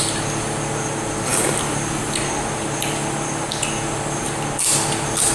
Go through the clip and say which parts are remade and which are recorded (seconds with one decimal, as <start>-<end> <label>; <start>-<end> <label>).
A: 0.0-5.3 recorded